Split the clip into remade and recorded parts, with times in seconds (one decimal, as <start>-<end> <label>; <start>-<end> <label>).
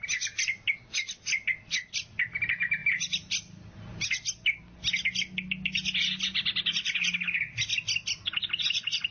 0.0-9.1 recorded